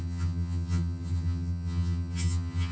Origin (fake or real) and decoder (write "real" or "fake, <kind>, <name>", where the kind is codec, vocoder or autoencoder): fake, vocoder, HiFi-GAN